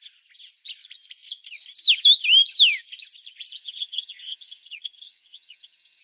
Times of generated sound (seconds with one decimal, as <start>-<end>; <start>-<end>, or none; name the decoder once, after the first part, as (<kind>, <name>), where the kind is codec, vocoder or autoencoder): 3.6-6.0 (vocoder, HiFi-GAN)